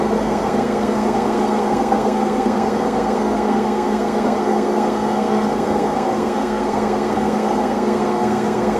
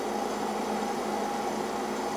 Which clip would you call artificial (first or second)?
first